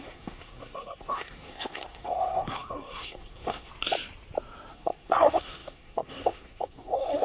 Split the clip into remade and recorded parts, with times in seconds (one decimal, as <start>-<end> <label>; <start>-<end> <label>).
0.0-3.7 remade; 3.7-4.7 recorded; 4.7-7.2 remade